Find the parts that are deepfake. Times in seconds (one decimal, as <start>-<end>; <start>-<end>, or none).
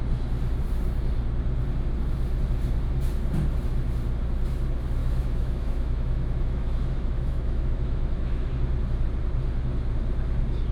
5.0-8.5